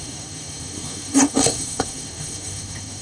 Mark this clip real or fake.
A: fake